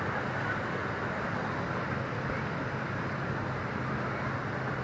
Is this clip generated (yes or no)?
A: no